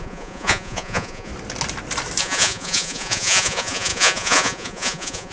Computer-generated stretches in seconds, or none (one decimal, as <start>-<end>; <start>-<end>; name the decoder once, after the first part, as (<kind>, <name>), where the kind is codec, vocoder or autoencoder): 0.0-1.3 (vocoder, Vocos); 2.2-5.3